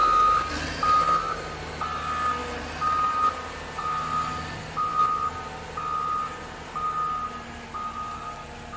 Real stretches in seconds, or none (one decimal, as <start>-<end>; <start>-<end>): 0.0-8.8